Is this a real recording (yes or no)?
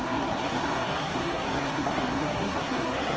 no